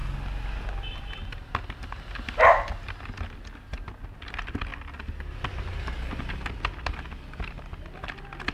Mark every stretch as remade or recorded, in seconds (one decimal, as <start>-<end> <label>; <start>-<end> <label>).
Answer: 0.0-4.1 recorded; 4.1-4.7 remade; 4.7-8.5 recorded